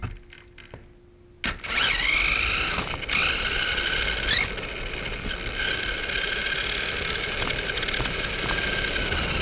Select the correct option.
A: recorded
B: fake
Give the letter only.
A